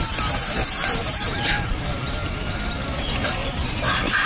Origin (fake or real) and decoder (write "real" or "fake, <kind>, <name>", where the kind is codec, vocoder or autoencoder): fake, vocoder, BigVGAN v2